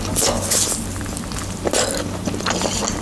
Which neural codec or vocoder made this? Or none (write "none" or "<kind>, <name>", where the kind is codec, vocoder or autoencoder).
none